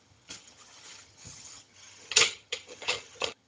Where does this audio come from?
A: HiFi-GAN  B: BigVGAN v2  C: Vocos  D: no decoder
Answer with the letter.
A